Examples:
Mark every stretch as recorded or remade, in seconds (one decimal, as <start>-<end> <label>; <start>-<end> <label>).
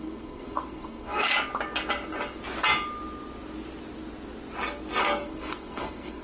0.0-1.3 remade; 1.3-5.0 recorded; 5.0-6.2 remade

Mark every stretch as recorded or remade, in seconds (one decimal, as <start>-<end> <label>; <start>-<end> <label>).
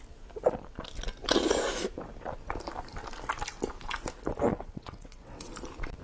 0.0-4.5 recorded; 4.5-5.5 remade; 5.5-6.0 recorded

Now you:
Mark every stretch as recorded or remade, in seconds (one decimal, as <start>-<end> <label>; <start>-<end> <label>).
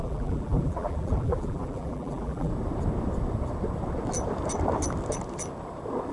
0.0-2.5 remade; 2.5-6.1 recorded